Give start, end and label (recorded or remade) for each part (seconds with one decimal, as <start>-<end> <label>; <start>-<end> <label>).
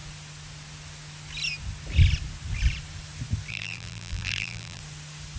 0.0-3.5 recorded; 3.5-4.8 remade; 4.8-5.4 recorded